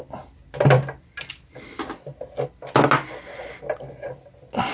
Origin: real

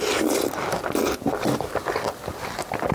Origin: real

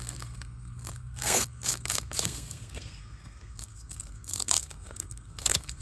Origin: fake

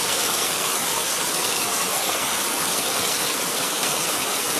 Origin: fake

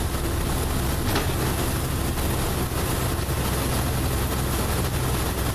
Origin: real